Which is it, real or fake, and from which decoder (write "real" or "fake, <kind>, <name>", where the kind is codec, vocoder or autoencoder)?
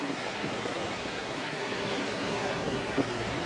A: fake, codec, SNAC